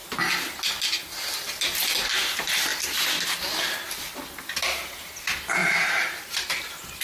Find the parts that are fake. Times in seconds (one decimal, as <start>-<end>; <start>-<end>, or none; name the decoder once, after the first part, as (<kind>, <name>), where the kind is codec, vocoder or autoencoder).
5.6-7.0 (vocoder, BigVGAN v2)